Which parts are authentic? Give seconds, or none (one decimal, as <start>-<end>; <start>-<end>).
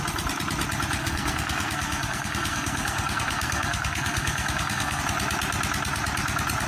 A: 0.0-1.0; 5.0-6.7